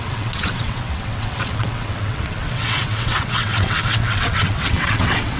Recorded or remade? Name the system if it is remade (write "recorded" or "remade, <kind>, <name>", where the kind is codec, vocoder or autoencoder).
remade, vocoder, WaveNeXt